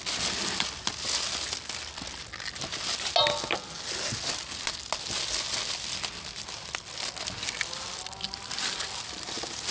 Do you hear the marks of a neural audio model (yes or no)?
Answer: no